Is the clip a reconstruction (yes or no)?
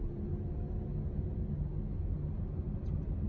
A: no